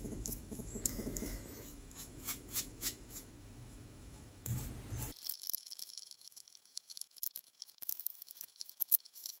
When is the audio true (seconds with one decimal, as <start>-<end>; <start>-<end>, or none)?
4.5-5.3